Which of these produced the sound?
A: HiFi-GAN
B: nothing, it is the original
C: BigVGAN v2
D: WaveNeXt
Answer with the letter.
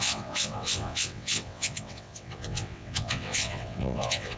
D